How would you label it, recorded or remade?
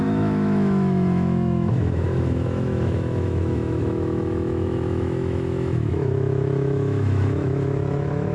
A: remade